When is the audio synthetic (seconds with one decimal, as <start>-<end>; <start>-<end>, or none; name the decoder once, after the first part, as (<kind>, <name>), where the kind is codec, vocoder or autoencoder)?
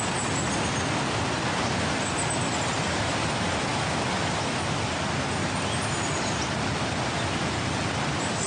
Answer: none